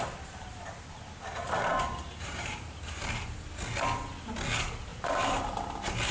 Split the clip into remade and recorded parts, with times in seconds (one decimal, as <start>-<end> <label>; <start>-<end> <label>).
0.0-1.7 recorded; 1.7-2.8 remade; 2.8-4.9 recorded; 4.9-5.4 remade; 5.4-6.1 recorded